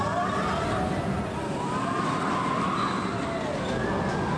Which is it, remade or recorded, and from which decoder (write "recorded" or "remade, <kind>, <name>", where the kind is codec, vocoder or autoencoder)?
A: recorded